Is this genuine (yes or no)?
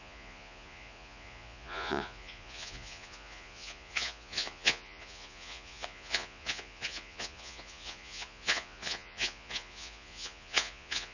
no